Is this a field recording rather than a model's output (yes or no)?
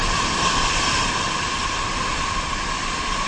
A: no